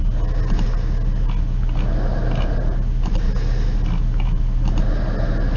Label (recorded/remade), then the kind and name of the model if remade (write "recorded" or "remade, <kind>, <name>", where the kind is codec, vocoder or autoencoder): recorded